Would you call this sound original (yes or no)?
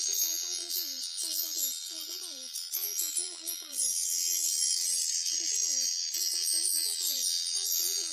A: no